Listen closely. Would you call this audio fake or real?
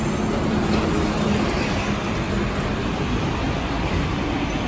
fake